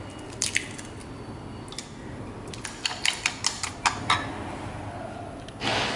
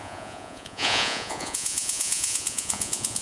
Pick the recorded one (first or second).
first